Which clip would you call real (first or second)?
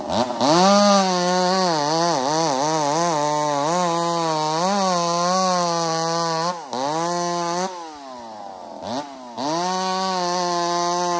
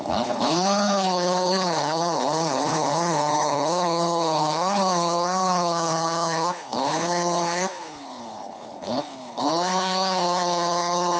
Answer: first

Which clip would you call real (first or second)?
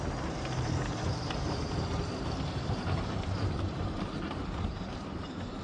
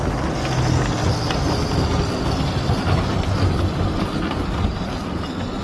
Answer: second